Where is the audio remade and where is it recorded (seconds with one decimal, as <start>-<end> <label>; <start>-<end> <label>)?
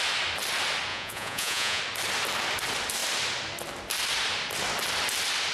0.0-0.9 recorded; 0.9-1.8 remade; 1.8-5.5 recorded